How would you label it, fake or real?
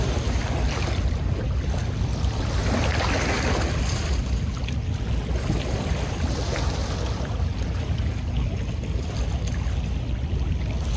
real